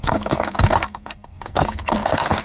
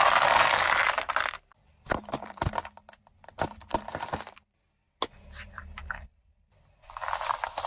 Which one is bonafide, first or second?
second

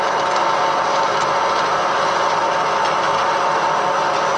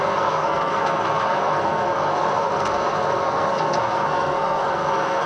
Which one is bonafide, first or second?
first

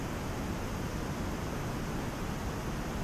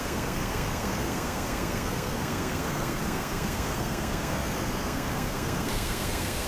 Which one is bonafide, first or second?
first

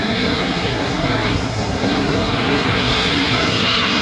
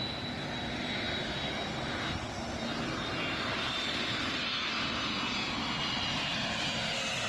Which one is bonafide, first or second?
second